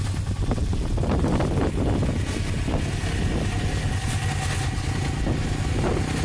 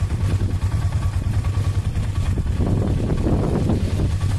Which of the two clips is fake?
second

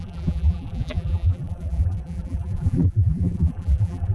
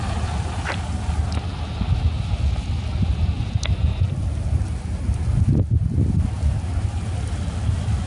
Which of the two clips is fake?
first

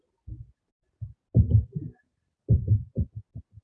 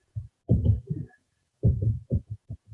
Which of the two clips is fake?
second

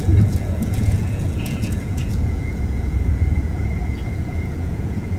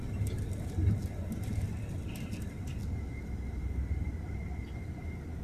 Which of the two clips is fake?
first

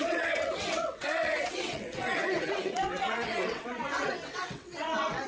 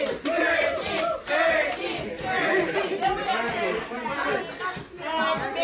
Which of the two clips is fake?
first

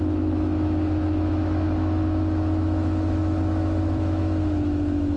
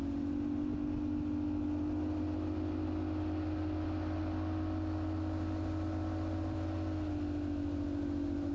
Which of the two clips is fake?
first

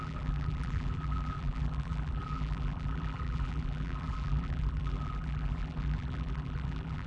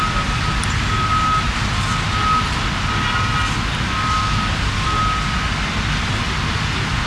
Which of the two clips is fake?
first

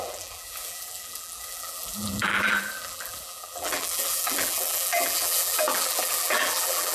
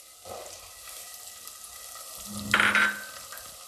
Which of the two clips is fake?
first